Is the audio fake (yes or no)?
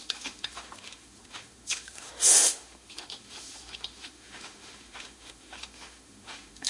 yes